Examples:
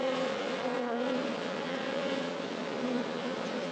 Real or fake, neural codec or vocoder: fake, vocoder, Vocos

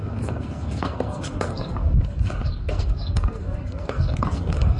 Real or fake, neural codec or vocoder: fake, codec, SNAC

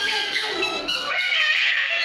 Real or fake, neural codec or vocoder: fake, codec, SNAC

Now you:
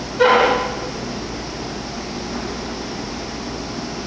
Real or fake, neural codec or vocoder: real